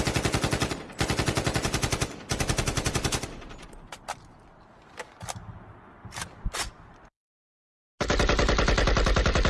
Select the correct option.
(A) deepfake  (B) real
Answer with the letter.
B